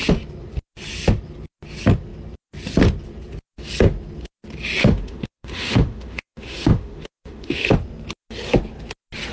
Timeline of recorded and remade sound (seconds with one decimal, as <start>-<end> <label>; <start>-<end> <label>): 0.0-4.8 recorded; 4.8-7.7 remade; 7.7-9.3 recorded